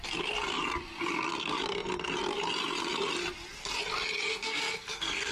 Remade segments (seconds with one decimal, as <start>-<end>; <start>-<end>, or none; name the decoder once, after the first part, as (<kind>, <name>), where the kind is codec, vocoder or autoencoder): 4.3-5.3 (codec, SNAC)